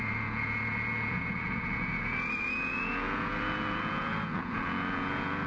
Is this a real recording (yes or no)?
no